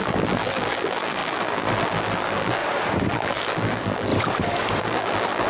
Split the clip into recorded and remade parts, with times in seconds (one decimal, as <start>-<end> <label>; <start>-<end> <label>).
0.0-2.6 remade; 2.6-3.1 recorded; 3.1-4.1 remade; 4.1-4.8 recorded; 4.8-5.5 remade